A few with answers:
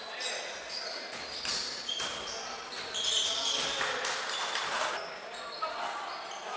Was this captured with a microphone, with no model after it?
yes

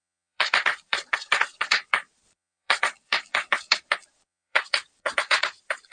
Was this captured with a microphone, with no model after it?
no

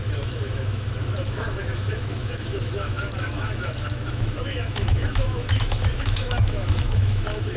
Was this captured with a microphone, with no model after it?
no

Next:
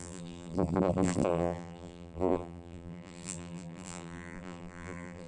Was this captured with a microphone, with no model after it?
no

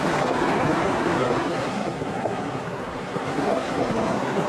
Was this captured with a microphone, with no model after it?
no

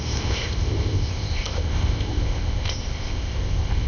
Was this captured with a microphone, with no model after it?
no